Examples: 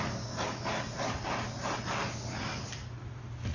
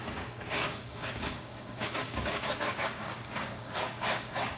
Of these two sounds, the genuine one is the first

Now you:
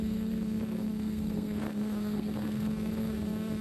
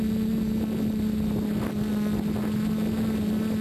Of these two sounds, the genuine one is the second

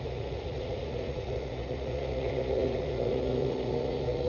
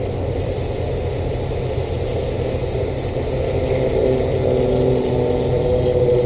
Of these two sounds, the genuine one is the second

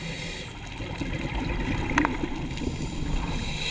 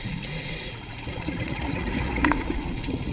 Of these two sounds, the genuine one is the first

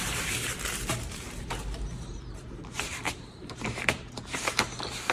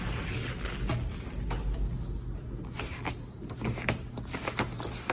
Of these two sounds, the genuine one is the second